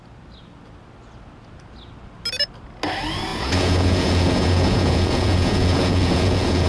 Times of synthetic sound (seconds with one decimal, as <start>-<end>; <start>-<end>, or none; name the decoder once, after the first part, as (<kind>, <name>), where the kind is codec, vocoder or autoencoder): 3.3-6.7 (vocoder, Vocos)

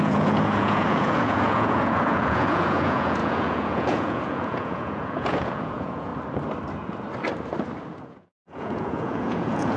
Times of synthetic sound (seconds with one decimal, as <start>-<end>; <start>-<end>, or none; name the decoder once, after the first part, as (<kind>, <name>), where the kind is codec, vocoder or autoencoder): 0.0-6.1 (vocoder, Vocos); 7.9-9.8

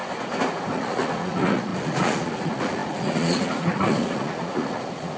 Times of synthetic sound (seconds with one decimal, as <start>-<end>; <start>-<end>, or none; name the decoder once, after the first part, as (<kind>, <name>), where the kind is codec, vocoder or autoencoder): 0.7-5.2 (vocoder, Vocos)